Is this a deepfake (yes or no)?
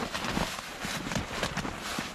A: no